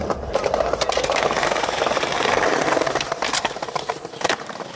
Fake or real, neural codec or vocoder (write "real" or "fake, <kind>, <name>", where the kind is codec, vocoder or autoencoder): fake, vocoder, BigVGAN v2